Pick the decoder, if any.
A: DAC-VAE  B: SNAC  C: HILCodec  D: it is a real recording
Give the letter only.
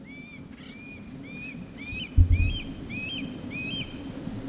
D